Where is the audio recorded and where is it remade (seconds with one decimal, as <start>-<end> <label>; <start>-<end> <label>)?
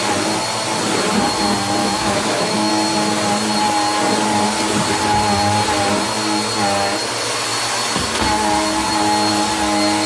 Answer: 0.0-1.8 recorded; 1.8-2.7 remade; 2.7-10.1 recorded